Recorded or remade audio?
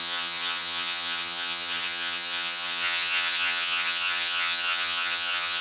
remade